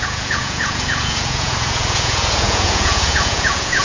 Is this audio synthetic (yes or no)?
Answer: yes